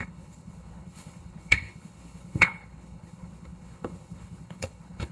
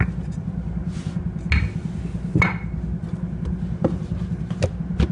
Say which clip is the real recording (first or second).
second